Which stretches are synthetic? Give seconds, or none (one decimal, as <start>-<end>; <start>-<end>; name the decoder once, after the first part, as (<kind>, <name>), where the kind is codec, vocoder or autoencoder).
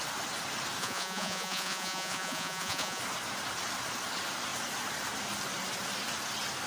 0.8-3.0 (vocoder, Vocos)